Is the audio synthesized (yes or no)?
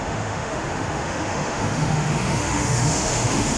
yes